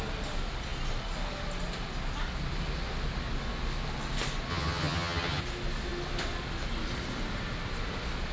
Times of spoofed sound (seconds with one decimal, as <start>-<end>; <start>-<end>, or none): 4.5-5.4